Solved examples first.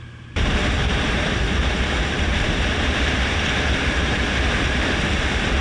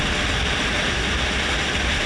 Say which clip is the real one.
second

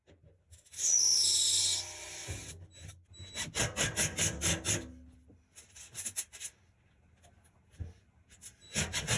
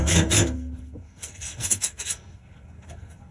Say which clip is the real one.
first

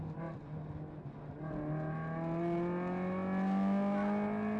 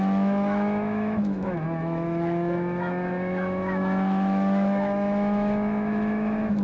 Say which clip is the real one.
first